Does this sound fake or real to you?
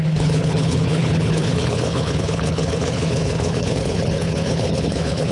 fake